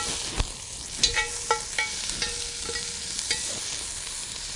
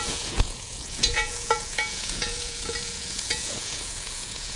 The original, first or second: first